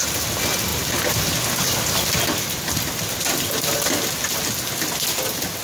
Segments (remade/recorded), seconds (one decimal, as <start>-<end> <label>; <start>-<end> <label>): 0.0-5.6 recorded